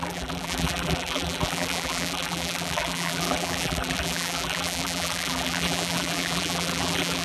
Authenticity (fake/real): fake